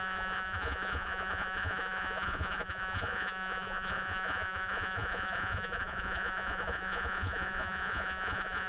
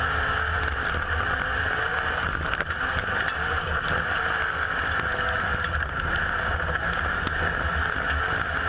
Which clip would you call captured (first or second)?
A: second